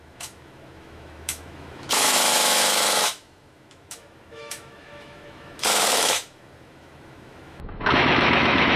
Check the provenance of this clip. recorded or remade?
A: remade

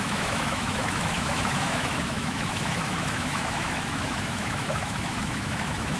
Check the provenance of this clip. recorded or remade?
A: remade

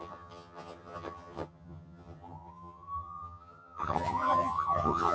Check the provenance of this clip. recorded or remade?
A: remade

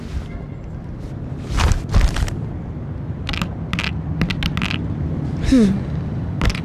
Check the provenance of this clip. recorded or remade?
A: recorded